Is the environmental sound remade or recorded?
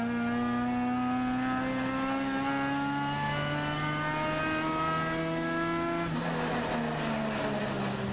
recorded